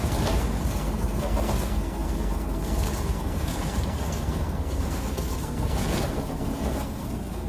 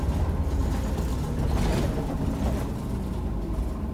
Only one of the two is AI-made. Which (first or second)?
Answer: first